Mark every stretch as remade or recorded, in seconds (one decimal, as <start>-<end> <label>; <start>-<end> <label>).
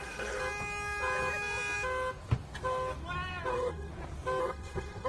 0.0-0.4 remade; 0.4-3.5 recorded; 3.5-3.9 remade; 3.9-4.4 recorded; 4.4-5.1 remade